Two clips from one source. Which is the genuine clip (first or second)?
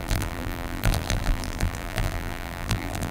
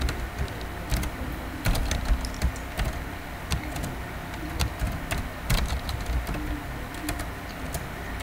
second